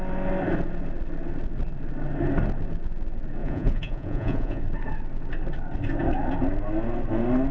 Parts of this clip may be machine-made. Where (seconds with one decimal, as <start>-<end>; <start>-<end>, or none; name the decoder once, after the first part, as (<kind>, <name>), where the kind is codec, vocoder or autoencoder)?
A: 3.4-4.6 (vocoder, Vocos)

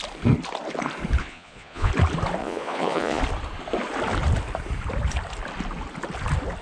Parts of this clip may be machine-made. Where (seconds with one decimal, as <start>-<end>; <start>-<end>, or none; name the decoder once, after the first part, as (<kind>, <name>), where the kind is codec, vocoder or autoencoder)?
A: 1.2-1.9 (vocoder, Vocos); 2.4-3.2

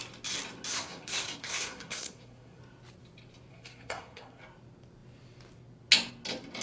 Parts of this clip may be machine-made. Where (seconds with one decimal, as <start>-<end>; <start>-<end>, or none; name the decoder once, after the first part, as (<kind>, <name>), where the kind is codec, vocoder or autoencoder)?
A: 0.7-2.6 (codec, SNAC); 3.5-4.4